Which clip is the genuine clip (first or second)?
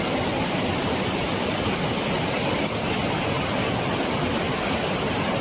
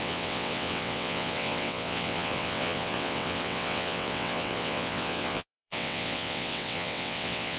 first